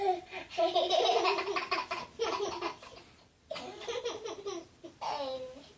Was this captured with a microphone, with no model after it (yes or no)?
no